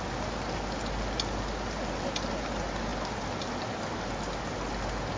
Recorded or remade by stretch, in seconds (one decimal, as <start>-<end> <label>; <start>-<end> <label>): 0.0-5.2 recorded